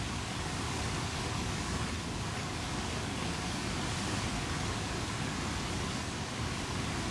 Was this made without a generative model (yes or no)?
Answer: no